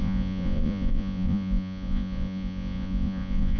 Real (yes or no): no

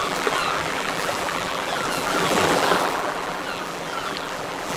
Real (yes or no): no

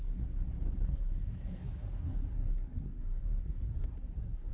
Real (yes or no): no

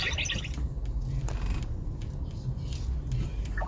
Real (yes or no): yes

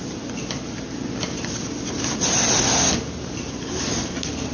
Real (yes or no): yes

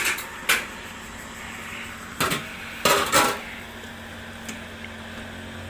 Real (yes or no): yes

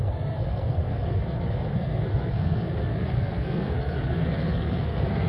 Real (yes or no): no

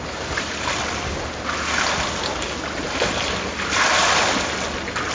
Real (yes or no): yes